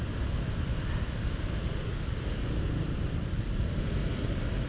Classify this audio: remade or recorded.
recorded